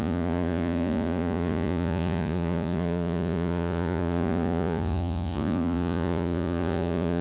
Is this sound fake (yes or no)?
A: yes